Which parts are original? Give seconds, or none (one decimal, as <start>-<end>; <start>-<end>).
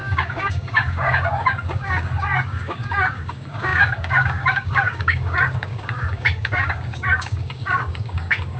none